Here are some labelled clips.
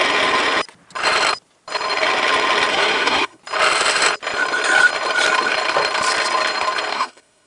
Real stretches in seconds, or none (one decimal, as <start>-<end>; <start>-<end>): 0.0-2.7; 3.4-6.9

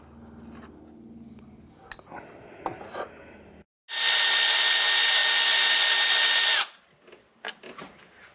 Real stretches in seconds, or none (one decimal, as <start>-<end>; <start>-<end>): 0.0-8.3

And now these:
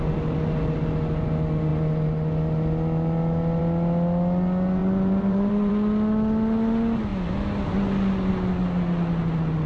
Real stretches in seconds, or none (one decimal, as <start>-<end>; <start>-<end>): 0.0-4.8; 5.7-9.7